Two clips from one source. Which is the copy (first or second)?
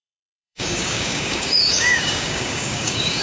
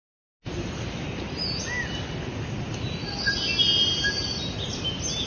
first